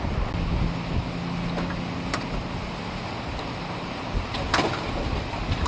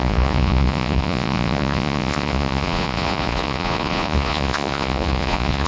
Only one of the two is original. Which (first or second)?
first